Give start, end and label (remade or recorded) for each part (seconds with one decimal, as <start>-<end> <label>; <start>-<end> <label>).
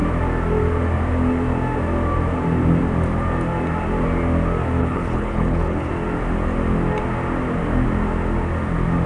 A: 0.0-4.8 recorded; 4.8-5.9 remade; 5.9-9.1 recorded